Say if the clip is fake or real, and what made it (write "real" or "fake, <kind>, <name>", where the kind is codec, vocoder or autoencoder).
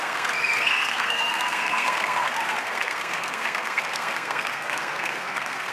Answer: fake, codec, SNAC